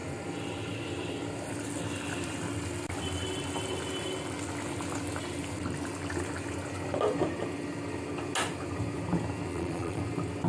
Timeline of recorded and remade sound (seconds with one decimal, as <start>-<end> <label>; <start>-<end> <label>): 0.0-9.5 recorded; 9.5-10.0 remade; 10.0-10.5 recorded